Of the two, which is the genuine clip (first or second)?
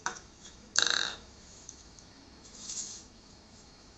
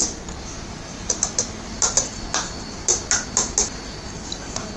second